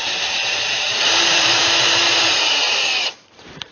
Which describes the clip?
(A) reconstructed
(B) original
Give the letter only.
A